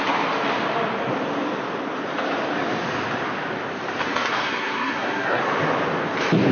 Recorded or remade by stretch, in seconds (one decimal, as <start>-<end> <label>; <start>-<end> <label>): 0.0-4.0 recorded; 4.0-5.4 remade; 5.4-6.5 recorded